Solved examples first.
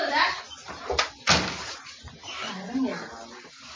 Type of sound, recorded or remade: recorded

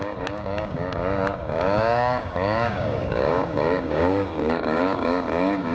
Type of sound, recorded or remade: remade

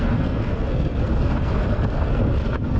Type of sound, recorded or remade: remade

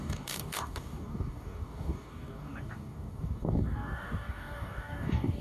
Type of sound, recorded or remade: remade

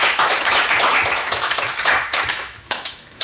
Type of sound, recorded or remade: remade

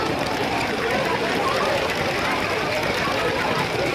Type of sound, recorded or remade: remade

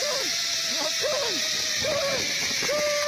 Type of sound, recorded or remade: recorded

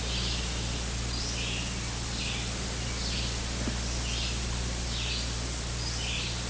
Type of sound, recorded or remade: recorded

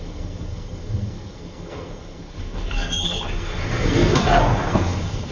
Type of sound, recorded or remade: remade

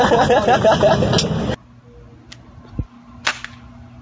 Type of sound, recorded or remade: recorded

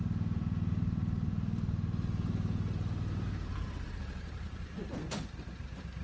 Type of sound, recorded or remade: remade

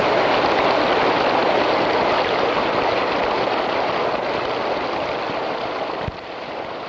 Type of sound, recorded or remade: recorded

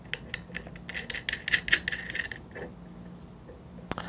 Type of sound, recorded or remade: recorded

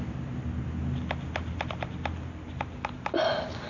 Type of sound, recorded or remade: recorded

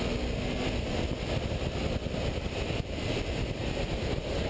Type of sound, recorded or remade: recorded